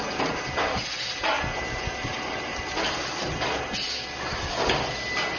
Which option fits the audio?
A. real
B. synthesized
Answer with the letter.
A